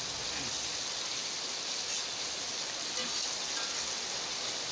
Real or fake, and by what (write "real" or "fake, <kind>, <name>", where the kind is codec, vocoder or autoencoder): real